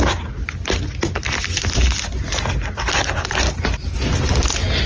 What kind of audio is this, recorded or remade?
recorded